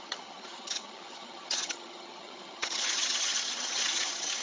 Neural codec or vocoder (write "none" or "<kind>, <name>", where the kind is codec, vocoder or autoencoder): vocoder, HiFi-GAN